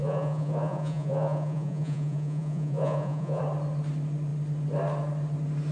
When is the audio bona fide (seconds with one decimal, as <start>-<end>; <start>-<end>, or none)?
3.4-5.7